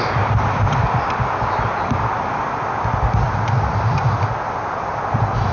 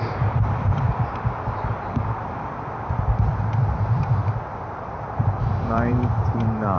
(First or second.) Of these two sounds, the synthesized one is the second